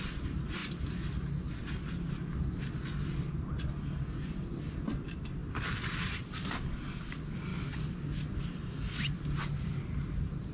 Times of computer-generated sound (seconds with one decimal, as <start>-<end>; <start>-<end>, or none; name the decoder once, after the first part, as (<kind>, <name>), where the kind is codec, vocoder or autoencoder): none